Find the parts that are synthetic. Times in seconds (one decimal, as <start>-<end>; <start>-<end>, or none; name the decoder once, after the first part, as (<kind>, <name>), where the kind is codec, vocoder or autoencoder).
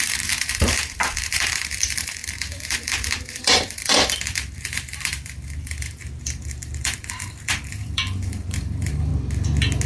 0.0-9.1 (vocoder, BigVGAN v2)